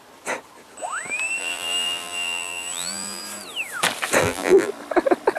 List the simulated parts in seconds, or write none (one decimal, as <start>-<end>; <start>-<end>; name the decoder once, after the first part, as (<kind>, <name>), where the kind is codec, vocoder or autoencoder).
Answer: 1.4-3.2 (vocoder, BigVGAN v2); 4.2-4.7